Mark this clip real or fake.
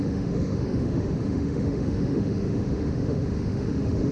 fake